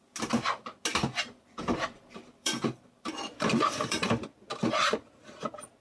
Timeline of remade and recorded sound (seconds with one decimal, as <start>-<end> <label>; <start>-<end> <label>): 0.0-0.9 recorded; 0.9-4.1 remade; 4.1-5.8 recorded